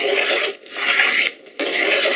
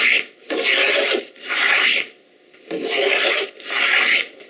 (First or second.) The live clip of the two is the first